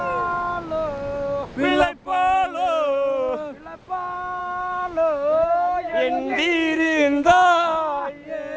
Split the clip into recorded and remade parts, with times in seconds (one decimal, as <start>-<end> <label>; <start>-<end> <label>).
0.0-4.4 recorded; 4.4-8.0 remade; 8.0-8.6 recorded